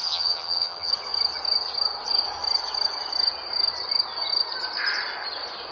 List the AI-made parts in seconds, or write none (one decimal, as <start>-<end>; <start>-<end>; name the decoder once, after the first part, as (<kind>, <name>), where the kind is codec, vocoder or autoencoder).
0.0-0.9 (vocoder, HiFi-GAN)

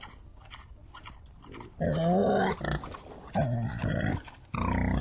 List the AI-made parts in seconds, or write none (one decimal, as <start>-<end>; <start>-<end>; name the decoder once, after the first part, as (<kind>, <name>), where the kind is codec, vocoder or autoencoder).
none

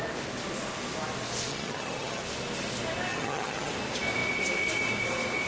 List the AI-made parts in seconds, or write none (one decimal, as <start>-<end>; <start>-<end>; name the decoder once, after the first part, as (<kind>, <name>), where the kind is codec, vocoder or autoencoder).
1.5-2.2 (vocoder, HiFi-GAN); 3.1-3.7